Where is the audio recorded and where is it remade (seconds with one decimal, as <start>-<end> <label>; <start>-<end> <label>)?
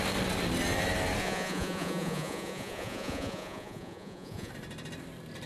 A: 0.0-1.2 recorded; 1.2-4.5 remade; 4.5-5.5 recorded